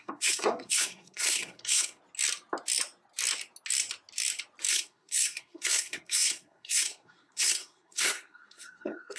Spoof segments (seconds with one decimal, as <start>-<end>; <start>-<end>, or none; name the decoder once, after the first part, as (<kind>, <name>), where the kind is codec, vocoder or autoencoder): 0.0-2.0 (codec, SNAC); 4.7-9.2